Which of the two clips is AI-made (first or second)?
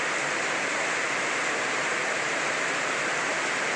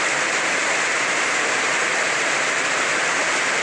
second